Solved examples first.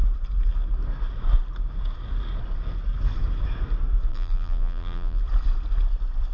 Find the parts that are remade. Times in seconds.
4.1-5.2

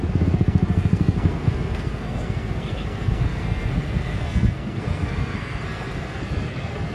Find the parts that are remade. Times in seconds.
0.0-6.9